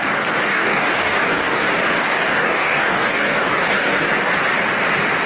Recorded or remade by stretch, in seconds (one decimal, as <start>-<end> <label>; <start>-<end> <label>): 0.0-0.5 recorded; 0.5-1.6 remade; 1.6-2.0 recorded; 2.0-4.1 remade; 4.1-5.3 recorded